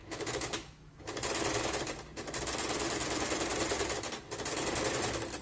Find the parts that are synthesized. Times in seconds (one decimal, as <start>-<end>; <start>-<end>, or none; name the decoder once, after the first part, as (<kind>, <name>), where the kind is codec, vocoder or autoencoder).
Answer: 0.0-1.1 (autoencoder, DAC-VAE)